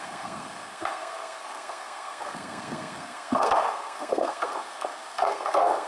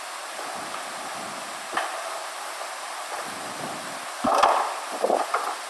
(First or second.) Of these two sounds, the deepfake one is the first